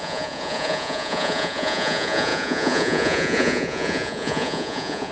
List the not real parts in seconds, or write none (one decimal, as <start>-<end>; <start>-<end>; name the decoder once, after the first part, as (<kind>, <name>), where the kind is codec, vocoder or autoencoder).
0.0-5.1 (vocoder, Vocos)